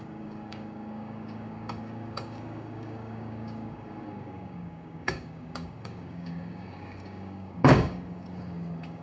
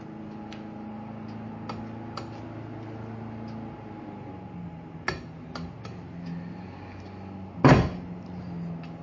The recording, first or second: second